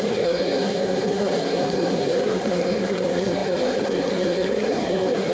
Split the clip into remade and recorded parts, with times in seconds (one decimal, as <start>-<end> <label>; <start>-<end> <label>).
0.0-5.3 remade